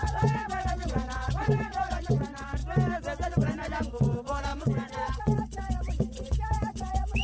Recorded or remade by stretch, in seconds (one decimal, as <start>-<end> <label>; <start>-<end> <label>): 0.0-2.6 remade; 2.6-3.3 recorded; 3.3-7.2 remade